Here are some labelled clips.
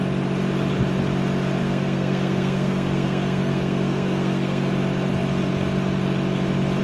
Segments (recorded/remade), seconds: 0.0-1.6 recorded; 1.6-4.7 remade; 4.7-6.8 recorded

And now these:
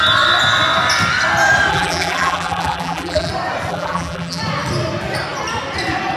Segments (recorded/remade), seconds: 0.0-1.7 recorded; 1.7-3.3 remade; 3.3-3.7 recorded; 3.7-4.4 remade; 4.4-6.2 recorded

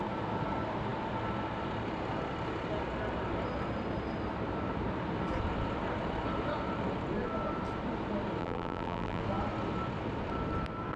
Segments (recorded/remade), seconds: 0.0-8.4 recorded; 8.4-9.2 remade; 9.2-11.0 recorded

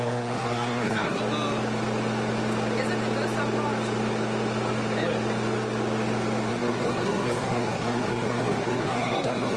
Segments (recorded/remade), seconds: 0.0-1.2 remade; 1.2-6.5 recorded; 6.5-9.6 remade

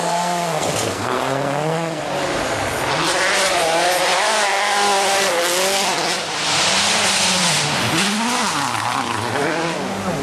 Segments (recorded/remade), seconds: 0.0-2.0 remade; 2.0-10.2 recorded

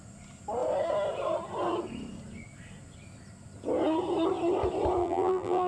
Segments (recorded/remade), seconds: 0.0-5.0 recorded; 5.0-5.7 remade